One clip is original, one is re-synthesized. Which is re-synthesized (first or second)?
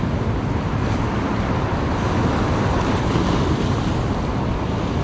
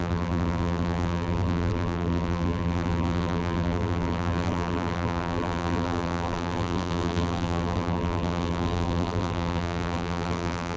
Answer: second